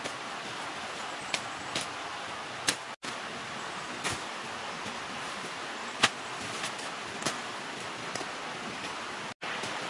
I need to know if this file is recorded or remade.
recorded